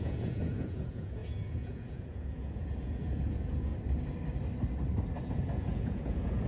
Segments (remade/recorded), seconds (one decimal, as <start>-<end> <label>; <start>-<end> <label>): 0.0-3.7 remade; 3.7-5.3 recorded; 5.3-6.5 remade